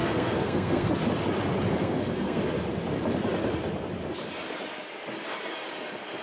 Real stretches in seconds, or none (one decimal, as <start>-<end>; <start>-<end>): 0.9-1.8; 2.4-6.2